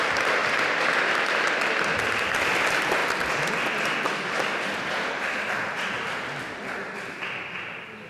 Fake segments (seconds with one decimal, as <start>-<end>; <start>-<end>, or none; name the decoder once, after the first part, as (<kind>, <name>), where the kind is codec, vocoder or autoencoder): 0.0-8.1 (vocoder, BigVGAN v2)